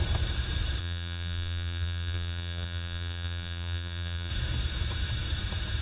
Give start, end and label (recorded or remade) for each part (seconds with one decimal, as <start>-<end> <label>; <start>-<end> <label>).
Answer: 0.0-0.8 recorded; 0.8-4.3 remade; 4.3-5.8 recorded